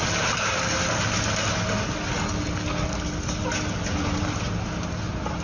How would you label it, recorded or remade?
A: recorded